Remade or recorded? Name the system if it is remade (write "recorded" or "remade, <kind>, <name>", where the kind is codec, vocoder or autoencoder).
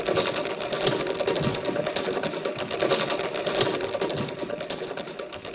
recorded